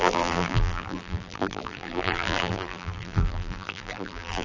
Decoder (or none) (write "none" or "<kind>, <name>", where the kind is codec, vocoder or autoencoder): vocoder, BigVGAN v2